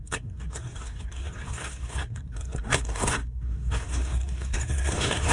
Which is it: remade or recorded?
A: remade